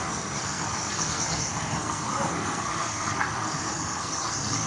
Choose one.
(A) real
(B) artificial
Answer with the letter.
B